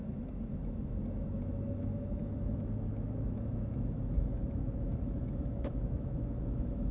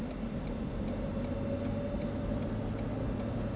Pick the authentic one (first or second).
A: second